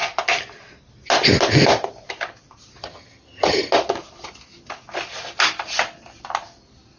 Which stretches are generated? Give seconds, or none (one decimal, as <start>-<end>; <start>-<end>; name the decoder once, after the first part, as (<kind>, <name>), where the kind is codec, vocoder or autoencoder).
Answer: 2.8-3.7 (vocoder, HiFi-GAN)